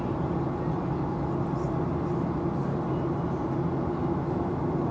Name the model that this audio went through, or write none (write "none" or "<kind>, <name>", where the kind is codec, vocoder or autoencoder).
none